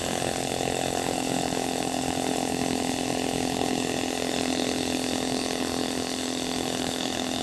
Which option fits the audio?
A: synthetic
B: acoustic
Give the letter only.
A